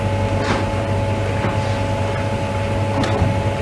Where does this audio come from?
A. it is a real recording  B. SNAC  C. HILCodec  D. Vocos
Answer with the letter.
A